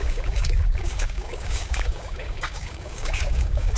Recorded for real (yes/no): no